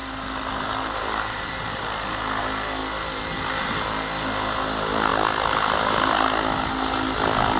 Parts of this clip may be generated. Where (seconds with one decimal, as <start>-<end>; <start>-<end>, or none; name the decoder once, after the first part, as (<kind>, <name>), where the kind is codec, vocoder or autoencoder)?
0.0-1.8 (vocoder, BigVGAN v2)